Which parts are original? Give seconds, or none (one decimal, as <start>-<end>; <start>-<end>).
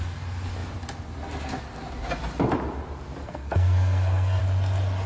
0.0-3.2; 4.4-5.1